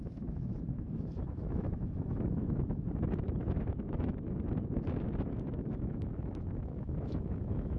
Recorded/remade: remade